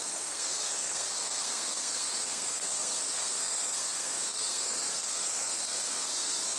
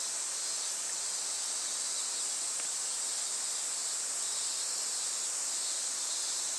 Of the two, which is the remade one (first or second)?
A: first